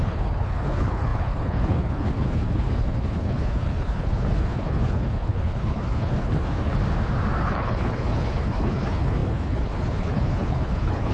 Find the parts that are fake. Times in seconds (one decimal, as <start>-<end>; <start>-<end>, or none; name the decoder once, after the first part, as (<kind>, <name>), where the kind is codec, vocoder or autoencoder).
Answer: 0.0-6.8 (codec, HILCodec); 7.4-11.1